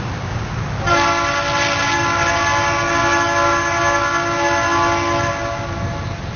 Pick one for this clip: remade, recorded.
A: recorded